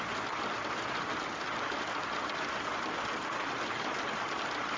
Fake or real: real